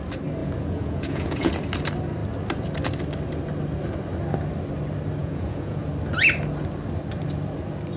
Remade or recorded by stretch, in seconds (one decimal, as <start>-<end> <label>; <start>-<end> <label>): 0.0-0.4 recorded; 0.4-1.5 remade; 1.5-5.2 recorded; 5.2-5.9 remade; 5.9-8.0 recorded